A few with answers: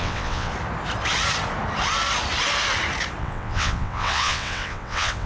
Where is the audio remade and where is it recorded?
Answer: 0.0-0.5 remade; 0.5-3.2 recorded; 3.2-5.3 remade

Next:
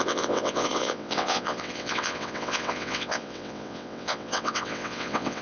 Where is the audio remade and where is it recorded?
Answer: 0.0-5.4 remade

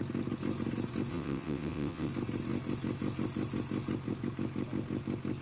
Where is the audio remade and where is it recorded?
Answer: 0.0-1.1 recorded; 1.1-2.1 remade; 2.1-5.4 recorded

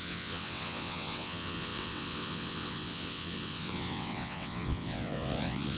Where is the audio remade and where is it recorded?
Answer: 0.0-5.8 remade

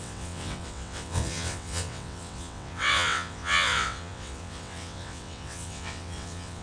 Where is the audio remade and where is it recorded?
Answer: 0.0-6.6 remade

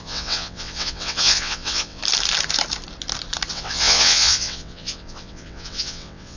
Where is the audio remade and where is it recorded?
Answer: 0.0-2.0 remade; 2.0-3.5 recorded; 3.5-6.4 remade

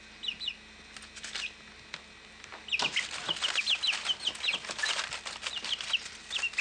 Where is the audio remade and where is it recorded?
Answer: 0.0-6.6 recorded